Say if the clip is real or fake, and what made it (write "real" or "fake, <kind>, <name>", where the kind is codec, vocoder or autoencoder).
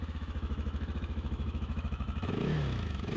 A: fake, autoencoder, DAC-VAE